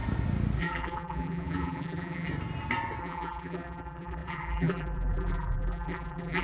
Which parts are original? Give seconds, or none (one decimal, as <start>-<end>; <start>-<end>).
0.0-0.6; 2.3-3.0